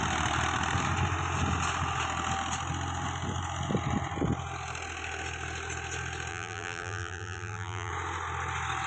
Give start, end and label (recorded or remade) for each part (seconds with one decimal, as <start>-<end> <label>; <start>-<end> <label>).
0.0-6.3 recorded; 6.3-7.9 remade; 7.9-8.9 recorded